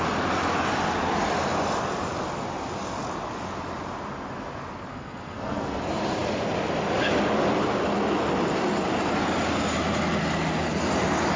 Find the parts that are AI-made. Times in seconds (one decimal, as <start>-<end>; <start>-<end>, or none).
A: 4.9-5.8